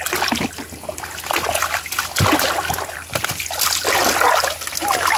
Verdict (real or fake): real